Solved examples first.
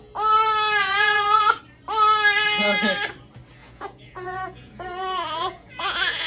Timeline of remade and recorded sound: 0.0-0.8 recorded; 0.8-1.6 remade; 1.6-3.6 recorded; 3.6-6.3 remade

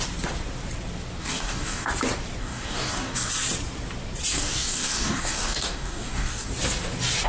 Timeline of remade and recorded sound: 0.0-1.2 recorded; 1.2-1.9 remade; 1.9-2.4 recorded; 2.4-3.3 remade; 3.3-4.3 recorded; 4.3-6.5 remade; 6.5-7.3 recorded

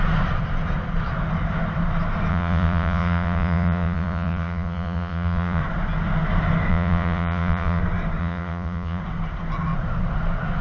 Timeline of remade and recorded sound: 0.0-2.3 recorded; 2.3-5.6 remade; 5.6-6.7 recorded; 6.7-7.8 remade; 7.8-8.2 recorded; 8.2-9.0 remade; 9.0-10.6 recorded

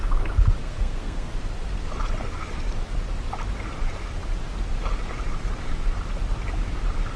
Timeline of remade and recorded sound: 0.0-0.6 recorded; 0.6-1.3 remade; 1.3-7.2 recorded

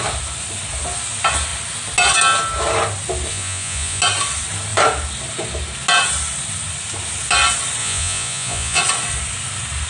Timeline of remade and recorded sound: 0.0-3.3 recorded; 3.3-4.0 remade; 4.0-7.8 recorded; 7.8-8.8 remade; 8.8-9.9 recorded

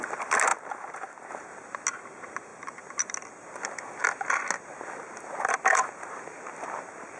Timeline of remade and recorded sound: 0.0-7.2 recorded